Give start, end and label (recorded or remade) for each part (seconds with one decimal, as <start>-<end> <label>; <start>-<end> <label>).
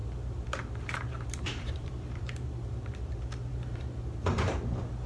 0.0-3.1 remade; 3.1-3.5 recorded; 3.5-4.6 remade; 4.6-5.1 recorded